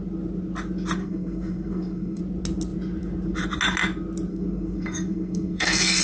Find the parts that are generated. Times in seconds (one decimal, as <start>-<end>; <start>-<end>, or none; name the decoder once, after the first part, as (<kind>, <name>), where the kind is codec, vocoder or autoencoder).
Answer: 1.0-2.2 (codec, SNAC); 4.3-6.0